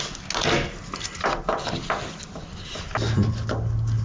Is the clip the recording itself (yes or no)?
yes